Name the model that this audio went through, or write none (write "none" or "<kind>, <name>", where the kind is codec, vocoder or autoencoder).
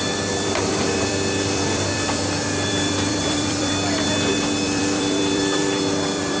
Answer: vocoder, BigVGAN v2